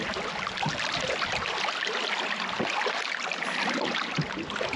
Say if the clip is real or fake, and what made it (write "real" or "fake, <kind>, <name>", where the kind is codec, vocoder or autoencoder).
real